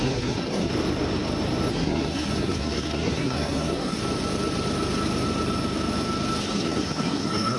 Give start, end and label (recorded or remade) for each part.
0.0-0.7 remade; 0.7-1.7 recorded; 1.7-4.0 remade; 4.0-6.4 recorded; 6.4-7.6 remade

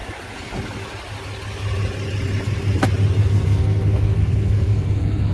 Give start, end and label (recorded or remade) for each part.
0.0-3.2 recorded; 3.2-5.3 remade

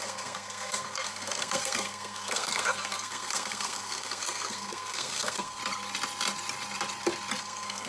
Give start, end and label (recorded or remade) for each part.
0.0-5.6 remade; 5.6-7.4 recorded; 7.4-7.9 remade